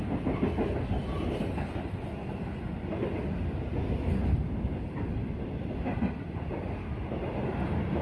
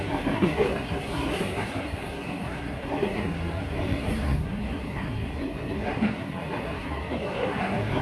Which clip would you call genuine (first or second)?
first